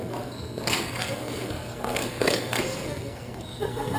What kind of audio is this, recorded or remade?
remade